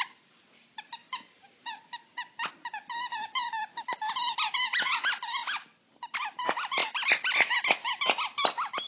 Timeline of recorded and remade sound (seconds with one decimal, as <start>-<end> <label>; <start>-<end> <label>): 0.0-2.1 remade; 2.1-2.9 recorded; 2.9-8.9 remade